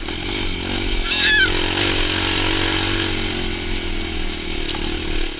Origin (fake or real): real